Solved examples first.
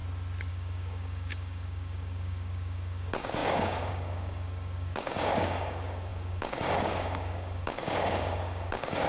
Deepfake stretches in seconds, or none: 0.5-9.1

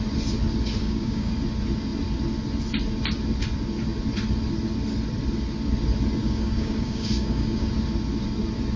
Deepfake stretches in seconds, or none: 0.8-1.3; 6.2-7.7

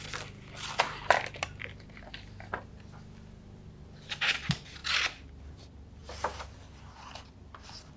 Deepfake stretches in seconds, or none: none

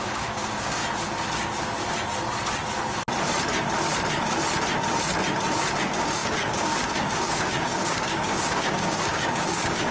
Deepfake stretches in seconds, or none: 0.0-0.8; 5.8-9.9

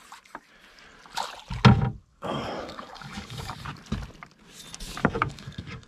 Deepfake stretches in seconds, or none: 2.1-3.5; 5.0-5.9

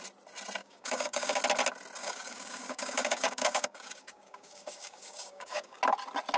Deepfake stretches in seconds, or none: 0.6-1.4; 2.0-5.8

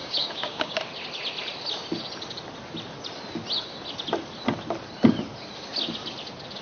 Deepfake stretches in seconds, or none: 0.0-0.8